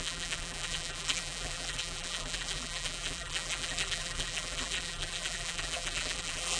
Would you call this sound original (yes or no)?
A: no